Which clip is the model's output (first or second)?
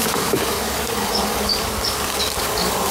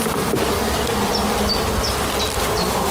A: first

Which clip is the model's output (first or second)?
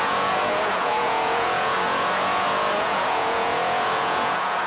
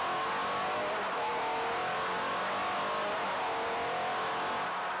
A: first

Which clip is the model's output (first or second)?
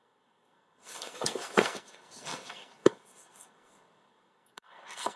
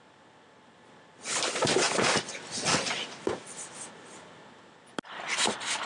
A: first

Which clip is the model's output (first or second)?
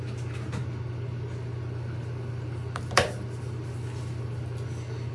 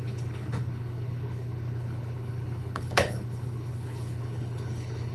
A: second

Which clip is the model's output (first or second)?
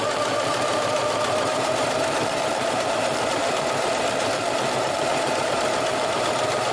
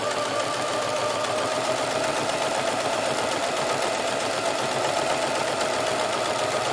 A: first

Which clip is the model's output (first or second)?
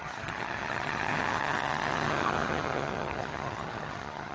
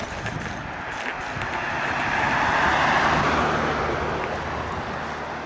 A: first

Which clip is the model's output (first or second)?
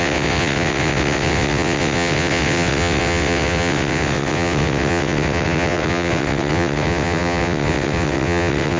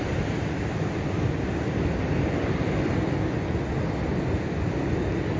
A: first